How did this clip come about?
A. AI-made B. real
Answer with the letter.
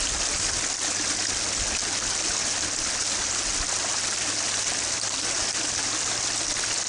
B